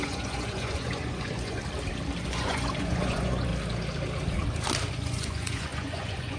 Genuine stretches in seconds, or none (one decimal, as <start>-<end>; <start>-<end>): 1.6-2.2; 3.5-4.9